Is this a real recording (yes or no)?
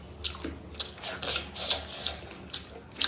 yes